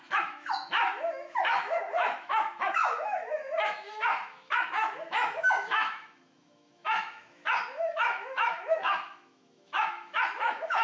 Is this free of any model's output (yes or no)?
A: no